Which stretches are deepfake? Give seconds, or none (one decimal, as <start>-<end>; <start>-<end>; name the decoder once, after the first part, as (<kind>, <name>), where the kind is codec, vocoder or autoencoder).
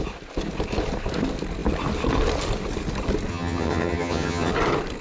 3.3-4.5 (vocoder, HiFi-GAN)